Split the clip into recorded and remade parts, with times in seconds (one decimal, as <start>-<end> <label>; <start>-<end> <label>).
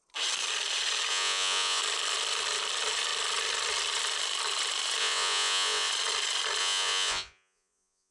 0.0-1.1 recorded; 1.1-1.8 remade; 1.8-5.0 recorded; 5.0-5.9 remade; 5.9-6.6 recorded; 6.6-8.1 remade